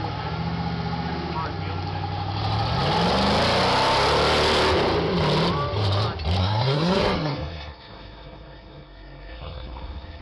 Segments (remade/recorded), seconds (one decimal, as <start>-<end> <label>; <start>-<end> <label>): 0.0-6.4 recorded; 6.4-10.2 remade